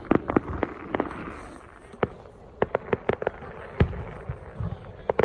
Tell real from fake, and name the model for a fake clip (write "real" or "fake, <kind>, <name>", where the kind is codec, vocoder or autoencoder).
real